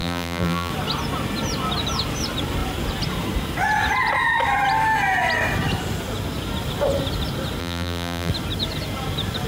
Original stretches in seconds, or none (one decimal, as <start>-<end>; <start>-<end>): 0.7-7.6; 8.3-9.5